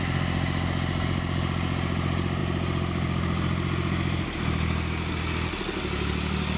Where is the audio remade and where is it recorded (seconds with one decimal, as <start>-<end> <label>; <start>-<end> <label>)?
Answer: 0.0-6.6 recorded